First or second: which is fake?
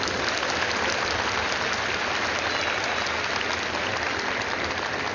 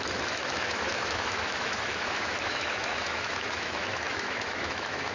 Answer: second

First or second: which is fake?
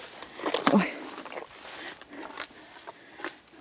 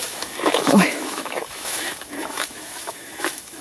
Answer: second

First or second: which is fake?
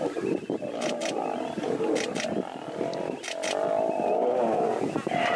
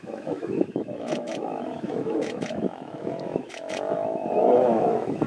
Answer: second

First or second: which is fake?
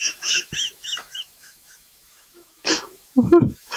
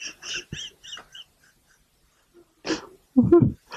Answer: first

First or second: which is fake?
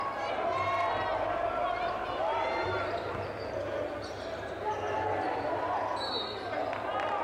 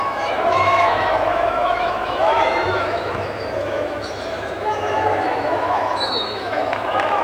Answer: second